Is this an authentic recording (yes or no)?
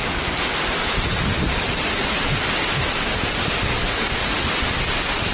yes